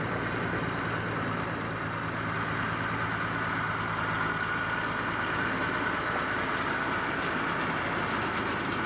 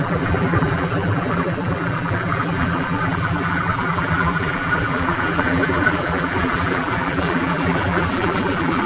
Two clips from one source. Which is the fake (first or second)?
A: second